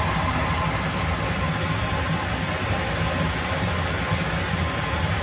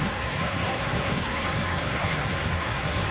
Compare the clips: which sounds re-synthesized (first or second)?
second